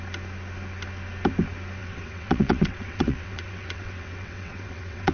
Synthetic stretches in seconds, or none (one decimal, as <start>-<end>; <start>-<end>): 1.8-5.1